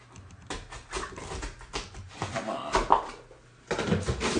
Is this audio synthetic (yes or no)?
no